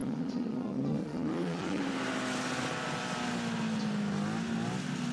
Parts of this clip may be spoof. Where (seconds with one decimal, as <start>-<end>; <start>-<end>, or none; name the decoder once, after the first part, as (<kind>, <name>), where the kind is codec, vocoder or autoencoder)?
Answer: 0.0-1.8 (vocoder, Vocos)